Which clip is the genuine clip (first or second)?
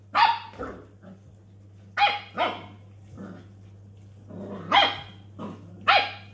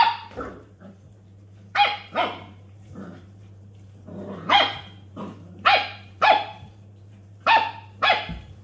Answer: first